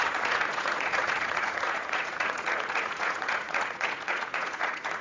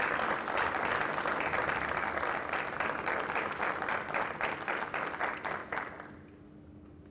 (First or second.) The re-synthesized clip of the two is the first